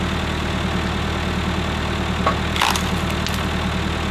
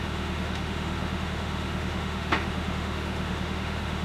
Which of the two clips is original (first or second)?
first